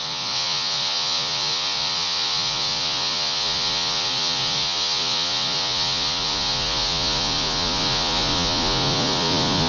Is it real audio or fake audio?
fake